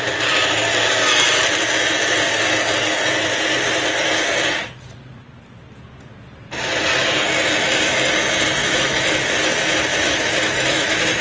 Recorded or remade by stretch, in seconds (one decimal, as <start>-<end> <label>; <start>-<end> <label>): 0.0-8.6 recorded; 8.6-9.3 remade; 9.3-9.9 recorded; 9.9-11.2 remade